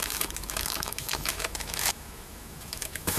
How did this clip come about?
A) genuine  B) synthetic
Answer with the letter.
B